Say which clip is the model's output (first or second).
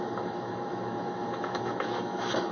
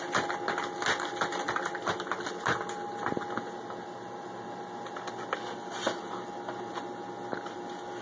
first